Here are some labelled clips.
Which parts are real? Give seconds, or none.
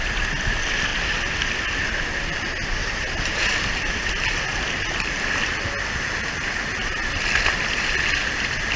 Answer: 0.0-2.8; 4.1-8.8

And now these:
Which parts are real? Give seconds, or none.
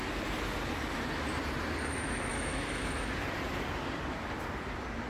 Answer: 0.0-2.3; 3.1-5.1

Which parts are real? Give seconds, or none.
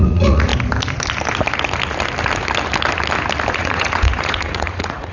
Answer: 0.5-3.5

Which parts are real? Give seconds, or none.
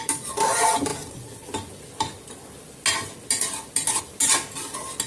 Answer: 0.0-5.1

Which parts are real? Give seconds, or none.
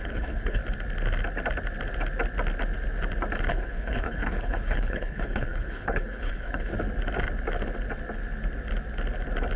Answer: 0.6-3.5; 6.7-9.6